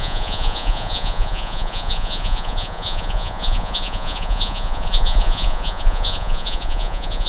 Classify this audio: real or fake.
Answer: fake